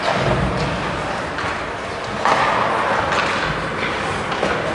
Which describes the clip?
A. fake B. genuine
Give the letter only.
B